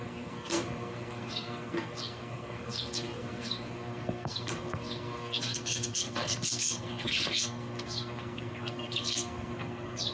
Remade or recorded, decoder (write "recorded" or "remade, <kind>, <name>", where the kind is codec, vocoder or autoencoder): remade, codec, SNAC